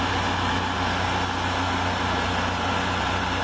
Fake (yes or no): no